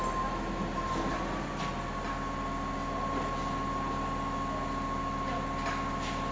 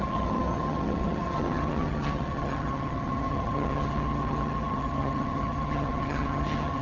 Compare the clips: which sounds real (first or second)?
first